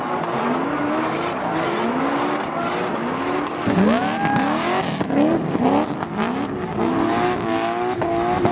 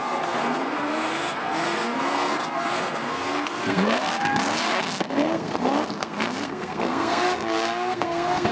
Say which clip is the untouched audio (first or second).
first